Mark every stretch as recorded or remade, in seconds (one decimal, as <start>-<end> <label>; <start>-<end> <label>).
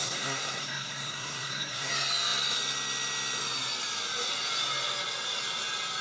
0.0-1.9 remade; 1.9-6.0 recorded